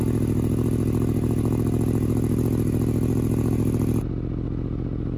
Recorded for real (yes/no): yes